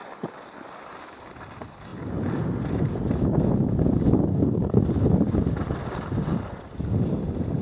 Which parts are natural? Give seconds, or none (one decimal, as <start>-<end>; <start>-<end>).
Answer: 0.0-4.3; 4.8-7.6